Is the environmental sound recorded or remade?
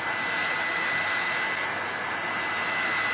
recorded